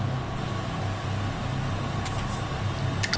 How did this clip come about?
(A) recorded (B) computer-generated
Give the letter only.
A